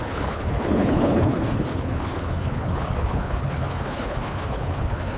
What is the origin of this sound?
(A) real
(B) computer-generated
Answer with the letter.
B